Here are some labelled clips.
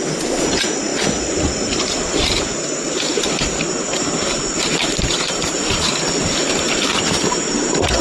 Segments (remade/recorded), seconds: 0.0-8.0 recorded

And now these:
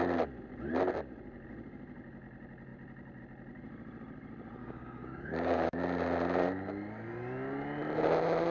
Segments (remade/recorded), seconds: 0.0-4.6 recorded; 4.6-5.8 remade; 5.8-8.5 recorded

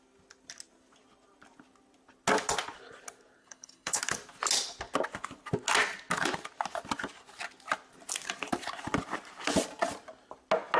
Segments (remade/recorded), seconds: 0.0-3.4 recorded; 3.4-4.0 remade; 4.0-10.8 recorded

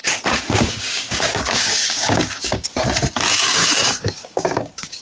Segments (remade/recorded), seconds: 0.0-2.7 remade; 2.7-3.3 recorded; 3.3-5.0 remade